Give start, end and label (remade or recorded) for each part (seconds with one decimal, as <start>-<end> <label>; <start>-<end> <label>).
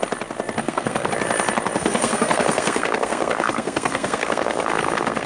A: 0.0-0.6 recorded; 0.6-1.1 remade; 1.1-1.8 recorded; 1.8-5.3 remade